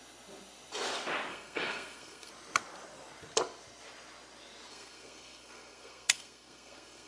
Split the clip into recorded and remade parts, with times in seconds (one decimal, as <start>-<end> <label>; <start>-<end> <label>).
0.0-1.3 recorded; 1.3-2.3 remade; 2.3-4.7 recorded; 4.7-7.1 remade